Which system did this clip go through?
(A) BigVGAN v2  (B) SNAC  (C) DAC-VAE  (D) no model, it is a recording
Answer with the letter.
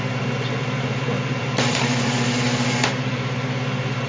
A